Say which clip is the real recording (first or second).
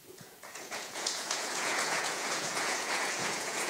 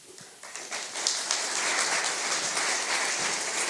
second